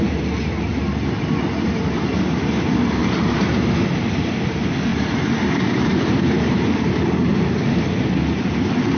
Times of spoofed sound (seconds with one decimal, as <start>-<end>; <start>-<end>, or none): 3.0-4.0; 4.9-7.9